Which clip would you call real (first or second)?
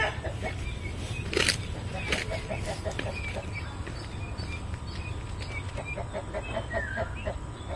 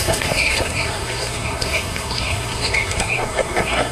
first